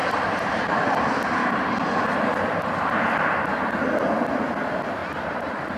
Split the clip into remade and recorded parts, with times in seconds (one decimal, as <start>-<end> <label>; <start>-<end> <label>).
0.0-3.5 remade; 3.5-5.0 recorded; 5.0-5.8 remade